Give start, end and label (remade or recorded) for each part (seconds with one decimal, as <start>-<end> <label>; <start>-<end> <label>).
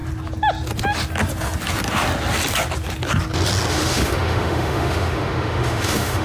0.0-3.7 recorded; 3.7-6.2 remade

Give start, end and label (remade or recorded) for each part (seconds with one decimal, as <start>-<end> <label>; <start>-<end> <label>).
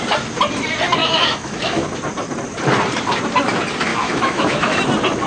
0.0-1.0 recorded; 1.0-1.9 remade; 1.9-3.9 recorded; 3.9-4.8 remade; 4.8-5.3 recorded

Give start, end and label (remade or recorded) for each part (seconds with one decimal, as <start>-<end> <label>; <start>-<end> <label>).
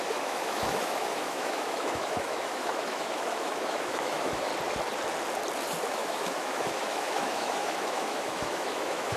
0.0-4.5 remade; 4.5-5.9 recorded; 5.9-9.2 remade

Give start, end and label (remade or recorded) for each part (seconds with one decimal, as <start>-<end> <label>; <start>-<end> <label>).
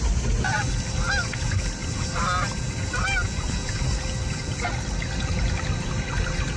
0.0-6.6 recorded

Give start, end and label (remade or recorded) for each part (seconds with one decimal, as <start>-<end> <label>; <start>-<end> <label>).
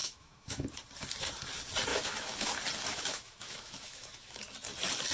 0.0-0.7 remade; 0.7-1.9 recorded; 1.9-2.5 remade; 2.5-2.9 recorded; 2.9-4.4 remade; 4.4-5.1 recorded